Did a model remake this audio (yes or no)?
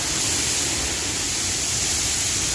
no